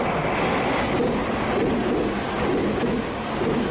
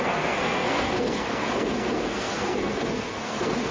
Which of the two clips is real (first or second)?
first